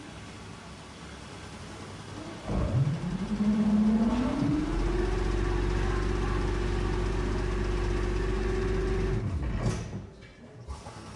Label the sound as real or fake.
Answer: real